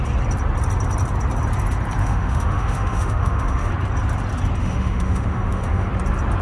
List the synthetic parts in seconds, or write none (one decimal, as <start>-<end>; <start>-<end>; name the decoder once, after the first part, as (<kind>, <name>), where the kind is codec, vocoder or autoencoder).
2.0-3.7 (autoencoder, DAC-VAE); 4.6-5.9